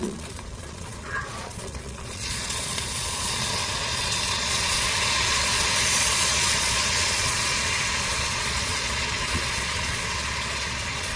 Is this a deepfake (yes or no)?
yes